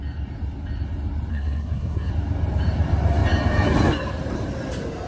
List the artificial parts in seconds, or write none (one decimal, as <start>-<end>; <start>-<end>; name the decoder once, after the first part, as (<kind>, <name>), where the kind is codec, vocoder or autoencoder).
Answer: 1.3-2.1 (codec, SNAC)